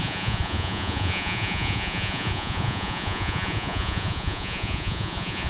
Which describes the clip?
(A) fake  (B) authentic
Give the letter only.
A